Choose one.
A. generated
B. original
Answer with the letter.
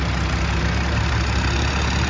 B